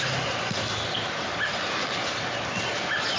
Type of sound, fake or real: real